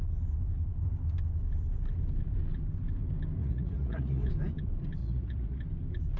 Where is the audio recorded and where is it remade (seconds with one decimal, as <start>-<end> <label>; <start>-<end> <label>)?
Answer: 0.0-3.4 recorded; 3.4-4.3 remade; 4.3-5.0 recorded; 5.0-5.6 remade; 5.6-6.2 recorded